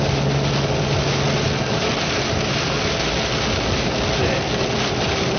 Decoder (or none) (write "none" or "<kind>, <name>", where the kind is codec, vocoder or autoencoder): none